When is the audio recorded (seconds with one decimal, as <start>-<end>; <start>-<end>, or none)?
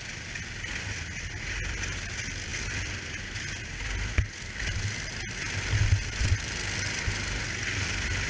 0.0-8.3